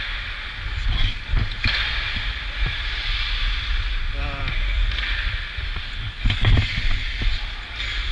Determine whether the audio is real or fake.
real